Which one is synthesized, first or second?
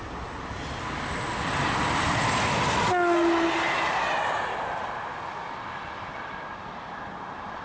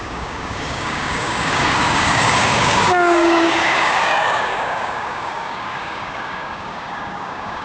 second